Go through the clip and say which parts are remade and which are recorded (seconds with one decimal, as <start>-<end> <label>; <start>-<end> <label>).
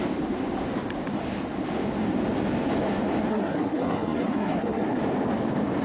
0.0-3.3 recorded; 3.3-5.0 remade; 5.0-5.8 recorded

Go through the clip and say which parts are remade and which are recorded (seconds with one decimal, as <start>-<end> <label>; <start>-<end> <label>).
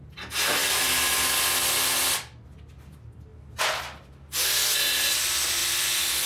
0.0-0.6 recorded; 0.6-1.1 remade; 1.1-3.3 recorded; 3.3-3.8 remade; 3.8-5.6 recorded; 5.6-6.3 remade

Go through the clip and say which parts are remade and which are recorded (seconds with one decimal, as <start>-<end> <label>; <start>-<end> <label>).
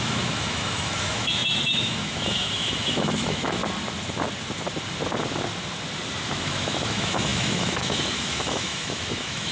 0.0-3.6 remade; 3.6-6.2 recorded; 6.2-9.5 remade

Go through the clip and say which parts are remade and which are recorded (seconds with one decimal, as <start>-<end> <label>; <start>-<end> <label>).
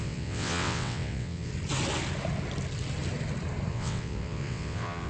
0.0-1.5 remade; 1.5-3.7 recorded; 3.7-5.1 remade